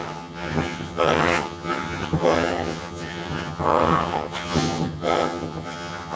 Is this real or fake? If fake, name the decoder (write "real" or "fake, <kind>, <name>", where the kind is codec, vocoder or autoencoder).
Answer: fake, vocoder, HiFi-GAN